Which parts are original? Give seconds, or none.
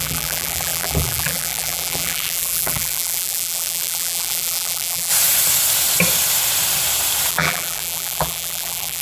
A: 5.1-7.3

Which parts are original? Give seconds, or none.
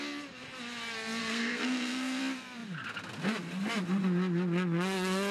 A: 0.0-1.2; 2.2-5.3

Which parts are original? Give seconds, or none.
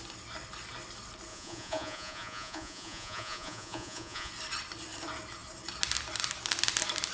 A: 0.0-1.3; 4.3-7.1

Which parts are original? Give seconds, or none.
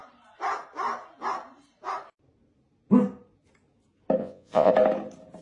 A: 0.0-4.2; 4.7-5.4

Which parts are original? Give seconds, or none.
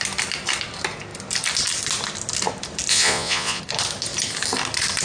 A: 0.0-2.9; 3.6-5.0